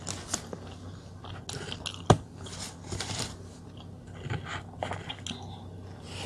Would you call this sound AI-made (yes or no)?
no